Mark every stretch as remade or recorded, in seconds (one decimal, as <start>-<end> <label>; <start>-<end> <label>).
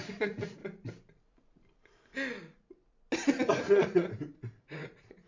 0.0-0.6 remade; 0.6-3.4 recorded; 3.4-5.3 remade